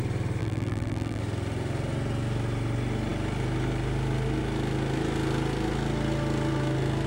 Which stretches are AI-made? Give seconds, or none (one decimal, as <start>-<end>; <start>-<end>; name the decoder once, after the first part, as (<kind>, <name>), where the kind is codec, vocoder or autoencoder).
0.4-1.2 (vocoder, BigVGAN v2)